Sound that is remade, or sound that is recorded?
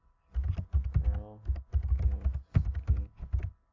recorded